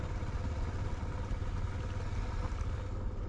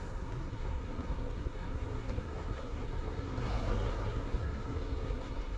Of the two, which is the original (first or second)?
first